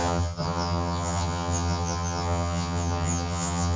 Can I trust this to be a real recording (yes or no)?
no